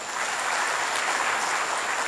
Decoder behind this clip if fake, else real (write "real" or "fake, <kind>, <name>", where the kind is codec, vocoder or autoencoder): real